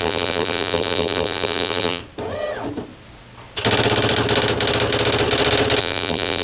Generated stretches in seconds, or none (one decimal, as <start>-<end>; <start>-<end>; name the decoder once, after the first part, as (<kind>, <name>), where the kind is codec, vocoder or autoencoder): 0.0-2.0 (vocoder, BigVGAN v2); 5.8-6.4